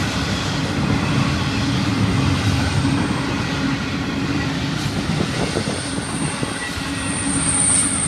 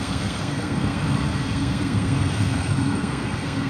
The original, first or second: first